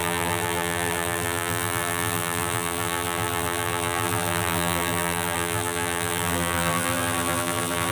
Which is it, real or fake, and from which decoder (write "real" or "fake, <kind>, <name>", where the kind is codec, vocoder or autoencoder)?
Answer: fake, vocoder, BigVGAN v2